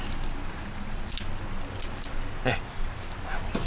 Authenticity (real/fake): real